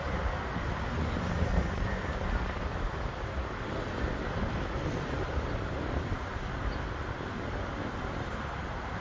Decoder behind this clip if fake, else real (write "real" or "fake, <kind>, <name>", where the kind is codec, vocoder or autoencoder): real